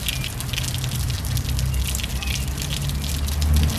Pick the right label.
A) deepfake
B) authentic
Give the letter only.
B